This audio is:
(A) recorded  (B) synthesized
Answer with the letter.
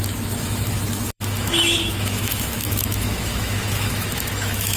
B